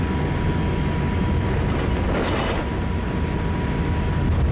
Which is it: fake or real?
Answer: real